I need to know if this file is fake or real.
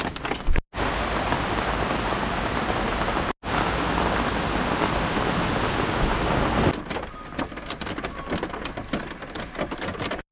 real